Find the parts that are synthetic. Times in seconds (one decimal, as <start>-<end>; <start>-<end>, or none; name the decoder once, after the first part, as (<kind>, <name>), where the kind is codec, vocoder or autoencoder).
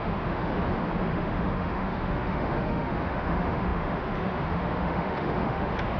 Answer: 0.0-0.5 (autoencoder, DAC-VAE); 1.1-6.0